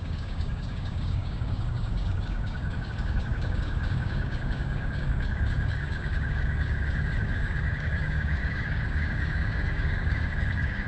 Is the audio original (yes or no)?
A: no